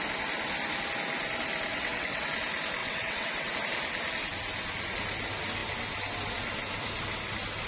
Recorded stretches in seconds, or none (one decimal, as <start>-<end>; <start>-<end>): 0.0-1.7; 2.3-2.8; 3.5-7.7